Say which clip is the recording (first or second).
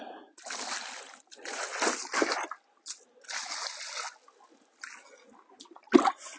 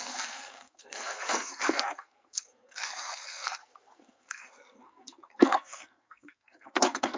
first